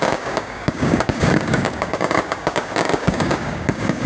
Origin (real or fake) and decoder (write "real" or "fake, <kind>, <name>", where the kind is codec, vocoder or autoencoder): fake, codec, DAC